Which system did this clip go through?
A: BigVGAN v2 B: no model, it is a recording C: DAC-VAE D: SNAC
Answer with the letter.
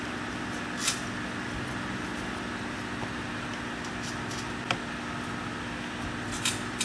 B